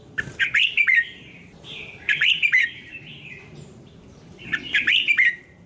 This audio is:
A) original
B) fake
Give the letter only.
B